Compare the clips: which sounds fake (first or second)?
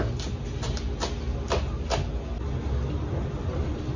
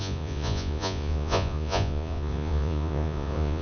second